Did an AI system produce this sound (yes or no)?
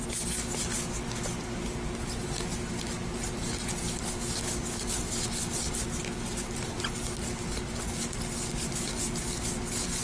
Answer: no